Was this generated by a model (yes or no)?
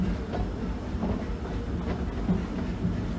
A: no